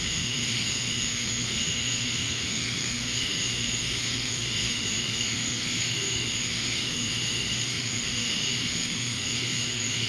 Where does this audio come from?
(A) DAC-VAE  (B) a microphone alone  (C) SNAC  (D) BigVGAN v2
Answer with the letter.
A